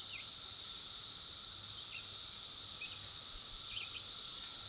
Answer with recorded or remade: recorded